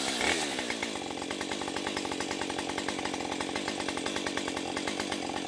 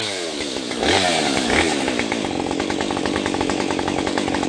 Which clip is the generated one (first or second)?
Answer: second